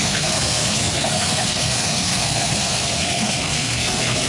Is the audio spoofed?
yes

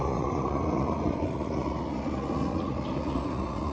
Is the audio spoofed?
yes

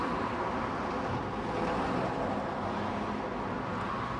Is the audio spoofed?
no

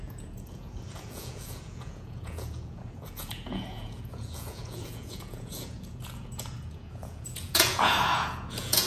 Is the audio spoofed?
yes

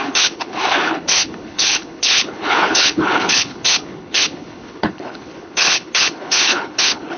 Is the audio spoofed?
yes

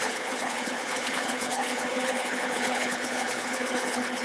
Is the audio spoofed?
yes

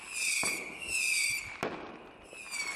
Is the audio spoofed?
no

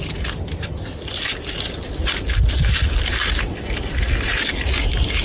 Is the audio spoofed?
no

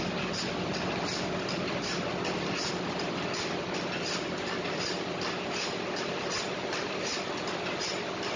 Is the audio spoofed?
no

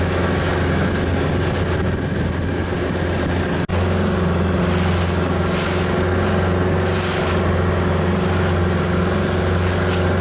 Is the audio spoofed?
no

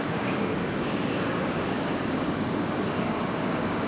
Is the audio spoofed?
yes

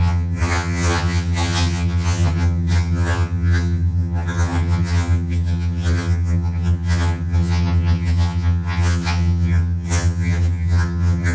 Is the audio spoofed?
yes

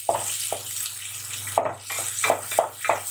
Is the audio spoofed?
no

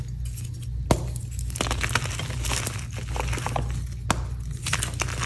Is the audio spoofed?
no